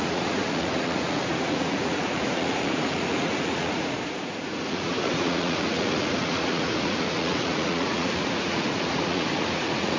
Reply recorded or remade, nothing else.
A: remade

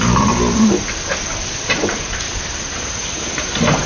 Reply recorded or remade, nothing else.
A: recorded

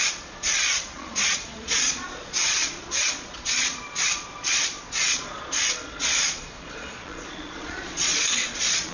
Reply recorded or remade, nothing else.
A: remade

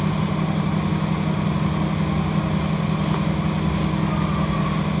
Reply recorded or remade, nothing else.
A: recorded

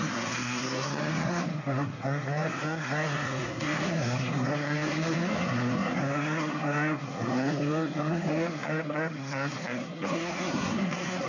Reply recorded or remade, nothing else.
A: remade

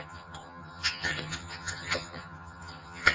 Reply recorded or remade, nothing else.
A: remade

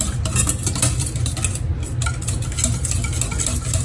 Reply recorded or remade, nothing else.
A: recorded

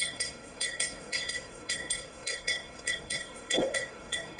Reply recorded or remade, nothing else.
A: remade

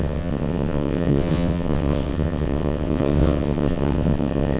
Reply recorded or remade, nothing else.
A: remade